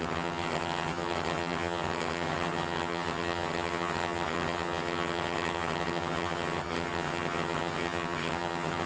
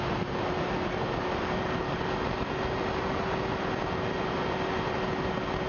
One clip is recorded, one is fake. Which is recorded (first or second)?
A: second